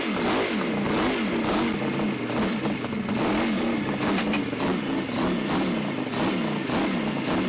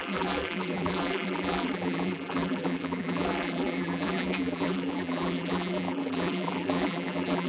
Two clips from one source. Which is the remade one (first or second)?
second